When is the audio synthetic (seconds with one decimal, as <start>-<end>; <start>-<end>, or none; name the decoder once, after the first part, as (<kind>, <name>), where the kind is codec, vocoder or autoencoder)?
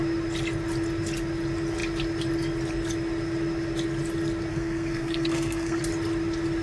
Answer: 4.5-5.8 (codec, SNAC)